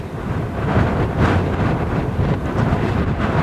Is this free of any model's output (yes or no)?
yes